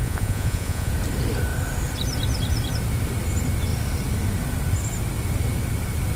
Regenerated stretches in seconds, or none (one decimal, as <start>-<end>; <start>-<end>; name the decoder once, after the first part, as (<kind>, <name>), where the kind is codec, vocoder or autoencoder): 0.0-0.9 (vocoder, Vocos)